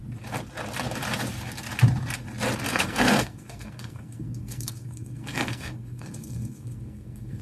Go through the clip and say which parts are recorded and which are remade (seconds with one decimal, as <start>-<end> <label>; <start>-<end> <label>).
0.0-2.7 recorded; 2.7-7.4 remade